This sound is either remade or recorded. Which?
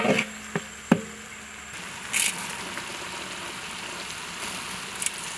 recorded